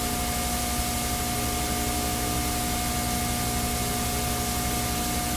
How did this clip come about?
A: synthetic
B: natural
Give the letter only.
B